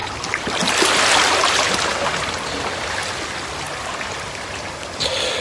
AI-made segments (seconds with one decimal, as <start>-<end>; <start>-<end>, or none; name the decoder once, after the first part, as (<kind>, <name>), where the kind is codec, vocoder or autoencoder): none